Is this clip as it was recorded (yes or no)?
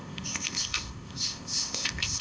no